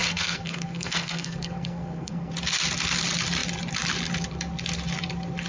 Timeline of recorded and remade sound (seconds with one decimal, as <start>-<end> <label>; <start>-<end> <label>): 0.0-2.3 remade; 2.3-5.5 recorded